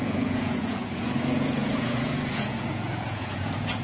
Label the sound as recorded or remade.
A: remade